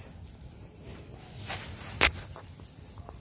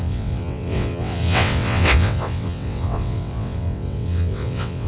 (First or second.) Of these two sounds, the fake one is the second